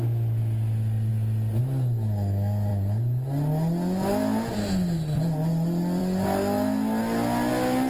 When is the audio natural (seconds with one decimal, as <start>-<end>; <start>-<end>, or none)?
0.0-1.1; 1.6-7.9

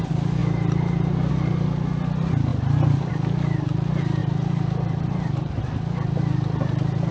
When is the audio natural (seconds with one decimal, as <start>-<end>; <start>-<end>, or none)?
0.0-4.2; 5.6-7.1